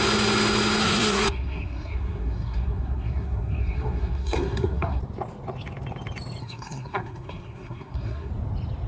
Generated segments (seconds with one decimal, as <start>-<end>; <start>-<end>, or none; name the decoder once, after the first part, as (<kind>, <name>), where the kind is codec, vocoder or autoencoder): 0.8-5.0 (codec, SNAC); 6.4-8.3